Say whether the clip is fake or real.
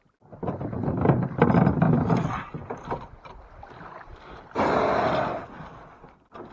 real